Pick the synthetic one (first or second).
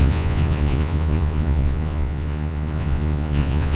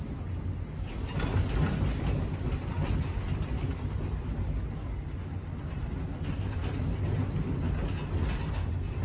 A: first